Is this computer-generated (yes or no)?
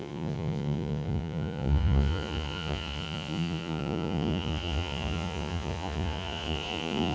yes